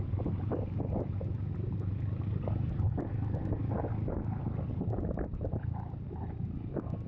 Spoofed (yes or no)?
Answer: no